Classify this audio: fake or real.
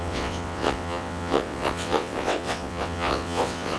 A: fake